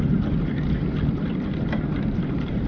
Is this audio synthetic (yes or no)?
no